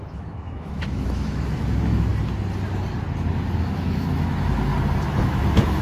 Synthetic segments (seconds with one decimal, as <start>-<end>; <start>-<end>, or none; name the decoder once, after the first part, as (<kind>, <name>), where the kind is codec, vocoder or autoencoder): 0.0-2.1 (autoencoder, DAC-VAE); 3.6-4.7; 5.2-5.8